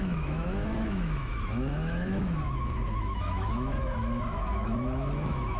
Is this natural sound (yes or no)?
no